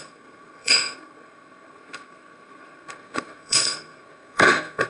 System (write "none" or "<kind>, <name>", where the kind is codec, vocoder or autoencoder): codec, SNAC